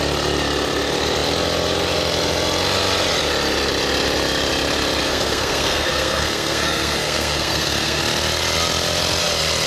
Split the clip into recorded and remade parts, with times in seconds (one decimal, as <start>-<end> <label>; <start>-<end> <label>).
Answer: 0.0-5.0 recorded; 5.0-8.0 remade; 8.0-9.7 recorded